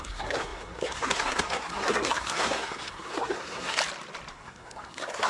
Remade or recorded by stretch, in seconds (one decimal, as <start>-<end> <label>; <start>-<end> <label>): 0.0-3.8 remade; 3.8-4.3 recorded; 4.3-5.3 remade